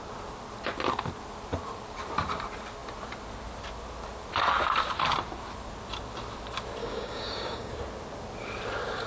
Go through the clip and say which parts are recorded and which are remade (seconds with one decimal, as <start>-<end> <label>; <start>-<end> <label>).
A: 0.0-6.8 recorded; 6.8-7.7 remade; 7.7-9.1 recorded